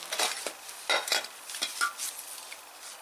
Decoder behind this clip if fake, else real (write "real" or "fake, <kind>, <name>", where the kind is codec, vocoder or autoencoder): real